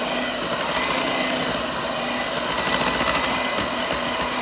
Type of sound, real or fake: real